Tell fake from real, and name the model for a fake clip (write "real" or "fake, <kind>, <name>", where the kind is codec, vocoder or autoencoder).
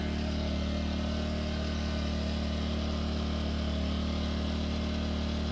real